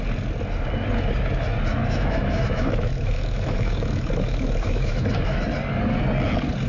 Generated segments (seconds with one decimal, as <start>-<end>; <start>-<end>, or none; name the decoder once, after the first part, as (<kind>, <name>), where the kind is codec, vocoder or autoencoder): 1.7-5.4 (autoencoder, DAC-VAE)